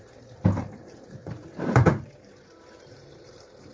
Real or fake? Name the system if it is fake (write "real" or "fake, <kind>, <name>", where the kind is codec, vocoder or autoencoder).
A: fake, vocoder, BigVGAN v2